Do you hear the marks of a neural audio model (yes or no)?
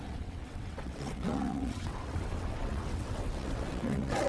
yes